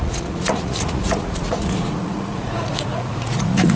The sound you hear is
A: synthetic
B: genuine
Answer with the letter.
A